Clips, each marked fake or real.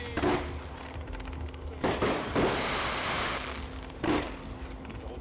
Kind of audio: real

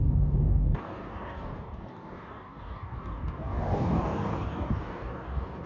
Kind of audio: fake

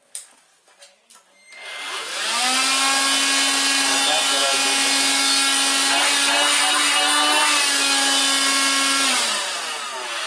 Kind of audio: real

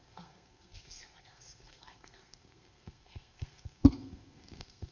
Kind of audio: fake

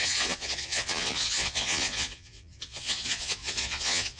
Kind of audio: fake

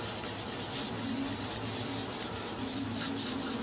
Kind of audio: real